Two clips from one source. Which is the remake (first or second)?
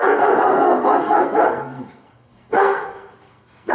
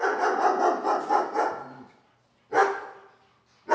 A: first